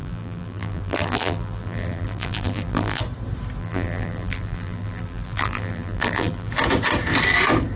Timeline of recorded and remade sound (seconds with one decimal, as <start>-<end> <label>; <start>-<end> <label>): 0.0-3.0 remade; 3.0-3.6 recorded; 3.6-6.5 remade; 6.5-7.8 recorded